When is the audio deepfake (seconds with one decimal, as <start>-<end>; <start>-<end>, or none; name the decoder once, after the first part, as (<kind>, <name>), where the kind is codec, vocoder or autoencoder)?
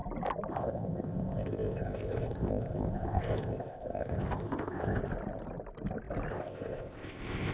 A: 0.5-5.0 (codec, ZipCodec); 6.3-7.5